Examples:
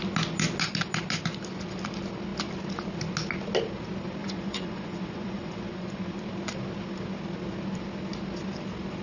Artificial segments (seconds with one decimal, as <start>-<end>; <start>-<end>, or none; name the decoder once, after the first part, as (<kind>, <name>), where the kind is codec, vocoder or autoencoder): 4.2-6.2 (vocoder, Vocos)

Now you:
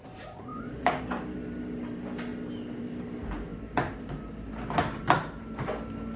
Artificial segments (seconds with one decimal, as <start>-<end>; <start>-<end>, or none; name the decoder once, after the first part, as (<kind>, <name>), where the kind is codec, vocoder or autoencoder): 0.0-0.5 (vocoder, BigVGAN v2); 1.0-6.2

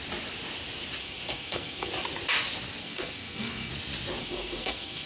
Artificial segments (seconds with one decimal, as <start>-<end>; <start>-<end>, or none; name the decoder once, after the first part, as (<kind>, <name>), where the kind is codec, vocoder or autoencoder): 1.0-1.9 (codec, SNAC); 2.8-3.7; 4.2-5.1